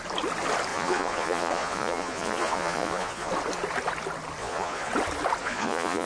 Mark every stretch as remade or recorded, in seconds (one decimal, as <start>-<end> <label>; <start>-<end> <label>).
0.0-0.7 recorded; 0.7-3.3 remade; 3.3-4.4 recorded; 4.4-4.9 remade; 4.9-5.4 recorded; 5.4-6.1 remade